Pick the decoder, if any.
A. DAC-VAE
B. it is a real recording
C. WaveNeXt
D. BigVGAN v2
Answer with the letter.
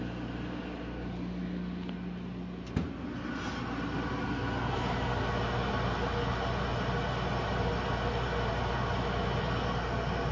B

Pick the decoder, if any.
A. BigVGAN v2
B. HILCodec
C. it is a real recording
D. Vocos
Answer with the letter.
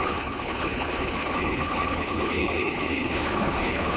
B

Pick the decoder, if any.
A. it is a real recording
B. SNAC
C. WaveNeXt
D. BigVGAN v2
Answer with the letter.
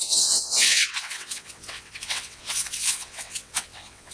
C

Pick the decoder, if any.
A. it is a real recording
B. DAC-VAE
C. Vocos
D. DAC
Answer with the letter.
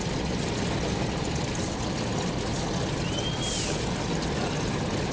A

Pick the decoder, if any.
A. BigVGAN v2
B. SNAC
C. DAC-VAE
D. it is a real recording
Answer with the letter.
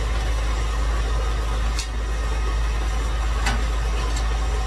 D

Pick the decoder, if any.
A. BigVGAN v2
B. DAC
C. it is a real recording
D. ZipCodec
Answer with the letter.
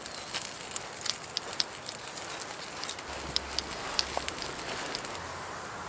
C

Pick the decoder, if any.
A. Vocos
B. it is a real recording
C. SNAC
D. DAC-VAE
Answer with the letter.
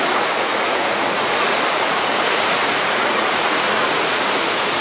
A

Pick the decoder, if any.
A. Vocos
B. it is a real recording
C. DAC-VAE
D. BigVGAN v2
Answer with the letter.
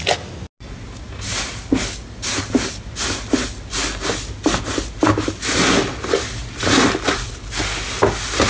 B